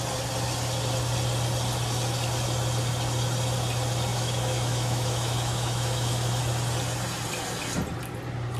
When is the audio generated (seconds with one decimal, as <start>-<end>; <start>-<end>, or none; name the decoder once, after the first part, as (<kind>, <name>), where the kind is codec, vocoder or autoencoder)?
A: 4.1-6.4 (autoencoder, DAC-VAE)